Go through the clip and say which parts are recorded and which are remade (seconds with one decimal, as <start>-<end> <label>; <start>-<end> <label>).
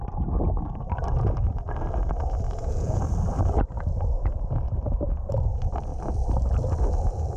0.0-2.2 recorded; 2.2-3.0 remade; 3.0-7.4 recorded